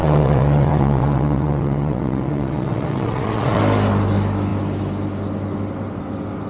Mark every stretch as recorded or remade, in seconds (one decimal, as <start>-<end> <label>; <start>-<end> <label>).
0.0-3.6 remade; 3.6-6.5 recorded